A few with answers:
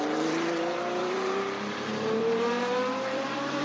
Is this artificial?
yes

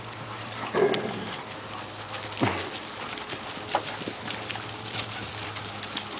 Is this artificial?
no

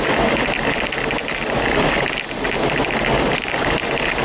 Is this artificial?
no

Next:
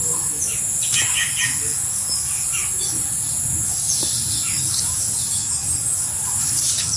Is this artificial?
no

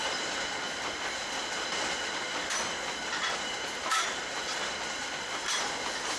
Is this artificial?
no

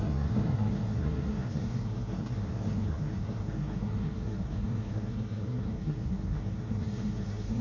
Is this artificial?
yes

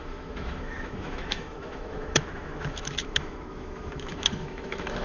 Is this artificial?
yes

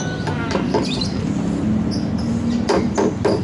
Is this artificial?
no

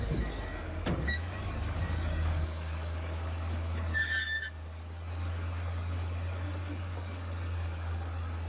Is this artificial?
yes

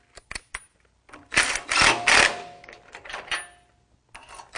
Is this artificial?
no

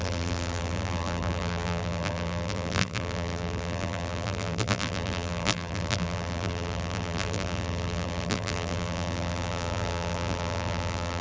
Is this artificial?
yes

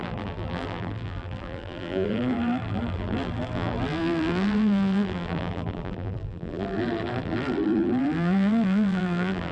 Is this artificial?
yes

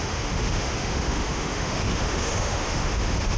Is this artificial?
yes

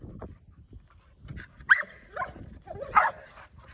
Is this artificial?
yes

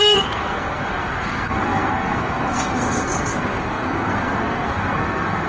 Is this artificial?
yes